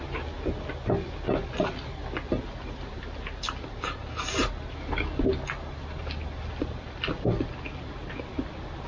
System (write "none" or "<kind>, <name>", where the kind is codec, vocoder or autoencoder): none